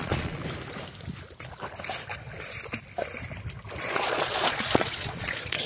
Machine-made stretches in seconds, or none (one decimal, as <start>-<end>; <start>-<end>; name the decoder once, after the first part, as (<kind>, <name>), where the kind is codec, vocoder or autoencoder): 0.0-0.4 (vocoder, Vocos); 3.8-5.7